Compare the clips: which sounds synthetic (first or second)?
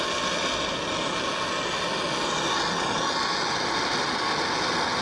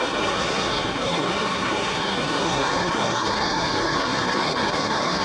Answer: second